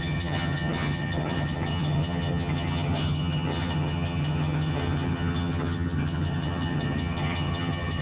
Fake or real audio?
fake